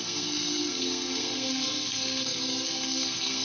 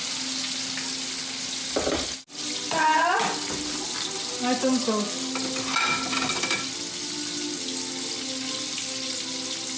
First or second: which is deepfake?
first